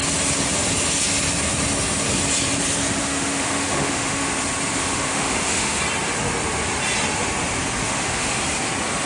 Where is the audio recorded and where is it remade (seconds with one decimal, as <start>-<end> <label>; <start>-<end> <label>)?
0.0-3.0 recorded; 3.0-4.3 remade; 4.3-4.8 recorded; 4.8-5.8 remade; 5.8-7.8 recorded; 7.8-8.4 remade; 8.4-9.1 recorded